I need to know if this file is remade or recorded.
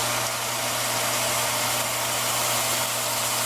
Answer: recorded